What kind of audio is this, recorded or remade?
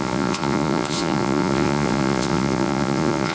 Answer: remade